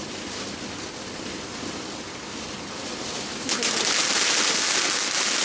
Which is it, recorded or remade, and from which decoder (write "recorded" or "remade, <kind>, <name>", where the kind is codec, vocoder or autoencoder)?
recorded